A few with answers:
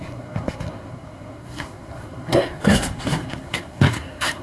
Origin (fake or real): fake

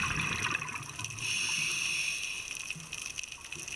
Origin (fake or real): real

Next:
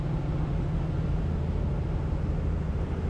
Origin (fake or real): real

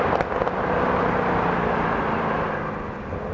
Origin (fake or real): real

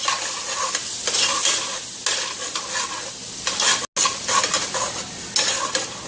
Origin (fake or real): real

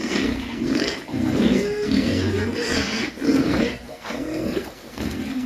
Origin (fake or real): fake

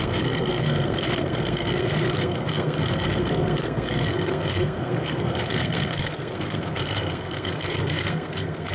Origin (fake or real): fake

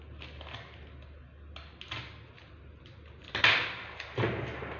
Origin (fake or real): real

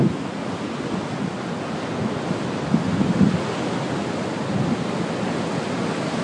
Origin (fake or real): real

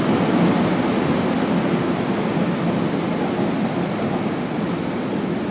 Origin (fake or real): real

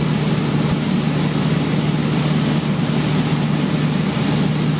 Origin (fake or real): real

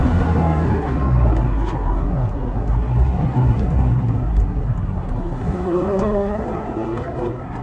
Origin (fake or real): fake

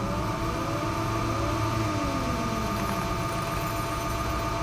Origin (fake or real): real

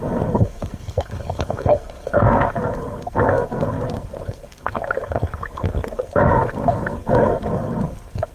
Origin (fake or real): fake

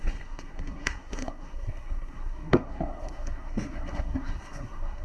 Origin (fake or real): fake